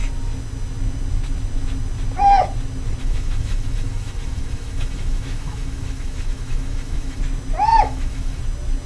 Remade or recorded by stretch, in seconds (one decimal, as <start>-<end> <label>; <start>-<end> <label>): 0.0-3.0 recorded; 3.0-7.2 remade; 7.2-7.7 recorded; 7.7-8.4 remade; 8.4-8.9 recorded